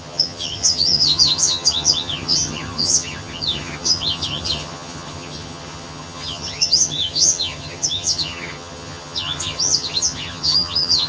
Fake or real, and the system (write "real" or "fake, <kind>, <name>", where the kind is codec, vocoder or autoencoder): fake, vocoder, HiFi-GAN